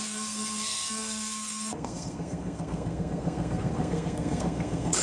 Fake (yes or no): yes